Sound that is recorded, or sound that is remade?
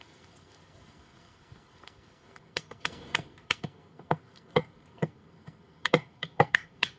remade